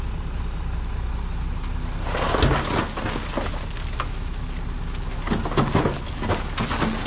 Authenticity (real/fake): real